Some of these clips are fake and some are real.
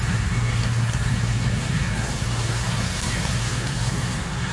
fake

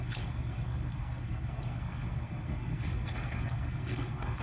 fake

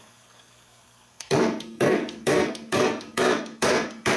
fake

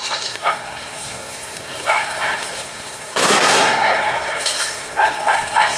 fake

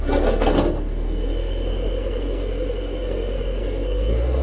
fake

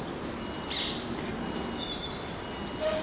real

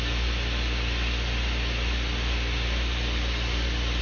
real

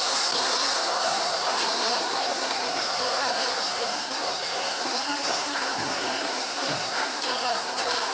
fake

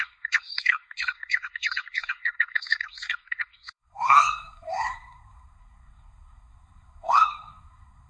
fake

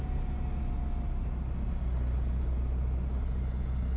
real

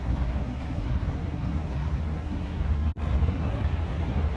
fake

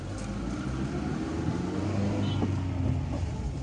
real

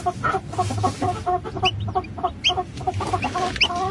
real